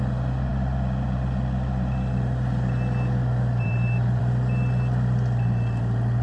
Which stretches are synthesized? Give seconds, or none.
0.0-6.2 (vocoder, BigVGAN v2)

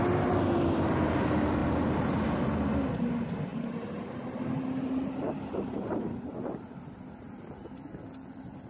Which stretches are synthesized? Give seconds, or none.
1.6-2.2 (vocoder, BigVGAN v2); 3.5-6.2

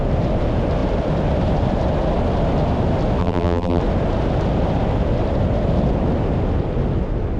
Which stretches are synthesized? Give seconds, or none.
3.2-3.8 (vocoder, BigVGAN v2)

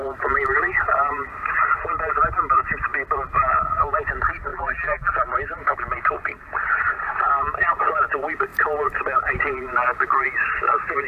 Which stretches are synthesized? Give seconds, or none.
4.5-5.1 (vocoder, BigVGAN v2)

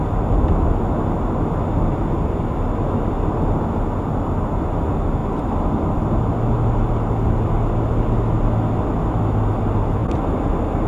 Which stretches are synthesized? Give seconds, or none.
5.2-5.9 (vocoder, BigVGAN v2); 10.0-10.5

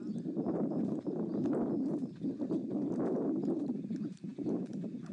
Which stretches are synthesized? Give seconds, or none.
0.0-1.3 (vocoder, BigVGAN v2); 3.6-5.1

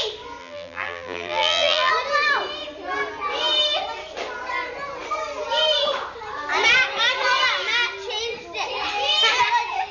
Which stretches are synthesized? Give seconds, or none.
0.4-1.9 (vocoder, BigVGAN v2)

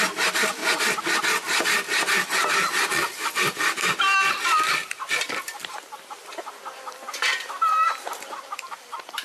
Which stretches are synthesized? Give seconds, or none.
0.0-0.6 (vocoder, BigVGAN v2); 4.3-5.6; 6.2-9.2